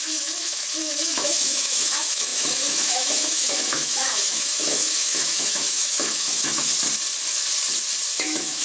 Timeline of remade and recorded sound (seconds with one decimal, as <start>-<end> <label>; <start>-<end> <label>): 0.0-6.7 remade; 6.7-8.1 recorded; 8.1-8.6 remade